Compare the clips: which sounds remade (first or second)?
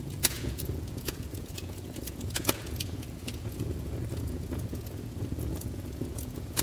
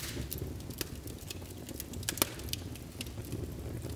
first